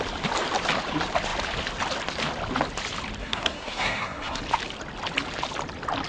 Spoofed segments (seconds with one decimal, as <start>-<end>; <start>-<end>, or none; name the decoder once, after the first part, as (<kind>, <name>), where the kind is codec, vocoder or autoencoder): 3.2-4.4 (codec, SNAC)